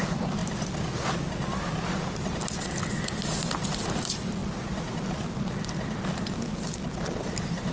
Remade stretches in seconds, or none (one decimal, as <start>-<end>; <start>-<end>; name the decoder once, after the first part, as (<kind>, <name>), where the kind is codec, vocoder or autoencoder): 4.4-7.7 (vocoder, BigVGAN v2)